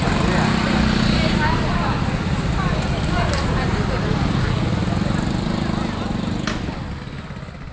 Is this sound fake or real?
real